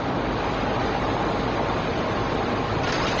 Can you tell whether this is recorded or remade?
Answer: recorded